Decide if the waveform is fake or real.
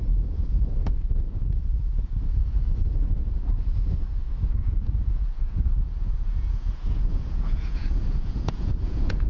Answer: fake